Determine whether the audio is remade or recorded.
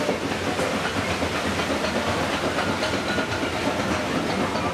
recorded